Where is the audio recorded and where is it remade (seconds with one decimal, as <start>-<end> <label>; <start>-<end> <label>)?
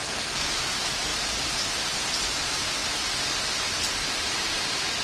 0.0-0.5 remade; 0.5-5.0 recorded